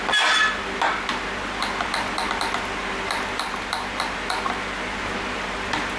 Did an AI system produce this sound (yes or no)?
no